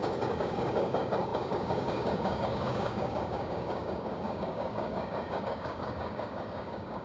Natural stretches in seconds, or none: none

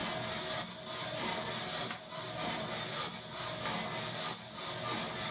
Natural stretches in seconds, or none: 0.0-5.3

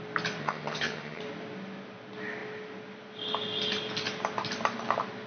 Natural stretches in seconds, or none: 0.0-0.4; 1.2-5.3